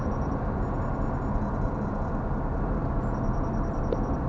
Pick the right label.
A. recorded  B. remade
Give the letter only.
A